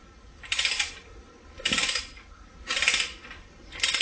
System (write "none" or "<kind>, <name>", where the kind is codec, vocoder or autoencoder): none